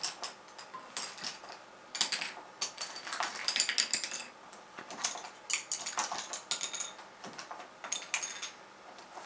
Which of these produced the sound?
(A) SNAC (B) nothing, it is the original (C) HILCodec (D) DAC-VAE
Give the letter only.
B